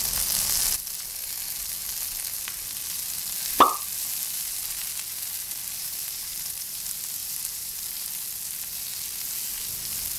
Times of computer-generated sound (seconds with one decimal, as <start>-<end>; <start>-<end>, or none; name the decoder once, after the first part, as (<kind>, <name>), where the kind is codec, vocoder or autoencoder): 5.8-6.7 (vocoder, BigVGAN v2); 7.2-7.9